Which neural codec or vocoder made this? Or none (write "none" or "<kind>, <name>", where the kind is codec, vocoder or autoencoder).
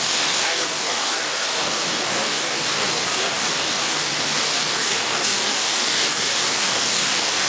codec, DAC